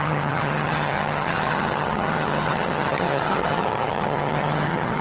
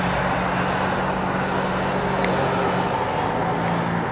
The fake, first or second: first